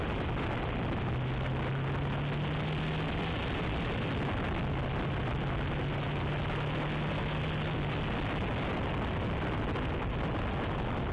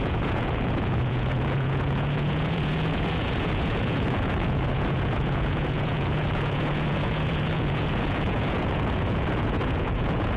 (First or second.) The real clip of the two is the first